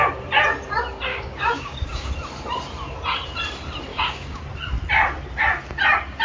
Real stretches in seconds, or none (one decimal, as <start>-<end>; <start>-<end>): 0.0-1.1; 2.1-3.9; 4.4-6.2